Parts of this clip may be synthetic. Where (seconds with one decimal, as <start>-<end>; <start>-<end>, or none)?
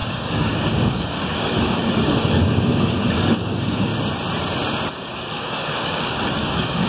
0.0-3.9; 4.9-6.9